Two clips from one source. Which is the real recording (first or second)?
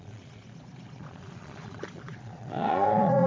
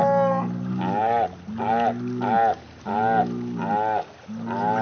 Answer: second